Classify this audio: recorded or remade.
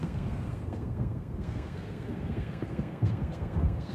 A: remade